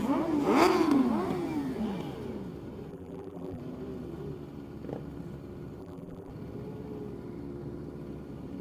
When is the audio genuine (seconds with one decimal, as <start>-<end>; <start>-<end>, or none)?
0.0-2.9; 3.6-5.8; 6.3-8.6